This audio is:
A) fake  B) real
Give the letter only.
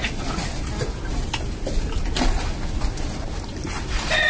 B